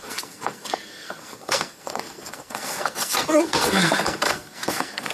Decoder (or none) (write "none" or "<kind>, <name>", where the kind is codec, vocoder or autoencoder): codec, SNAC